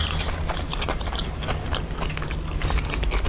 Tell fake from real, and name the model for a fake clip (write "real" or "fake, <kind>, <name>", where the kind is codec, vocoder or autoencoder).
real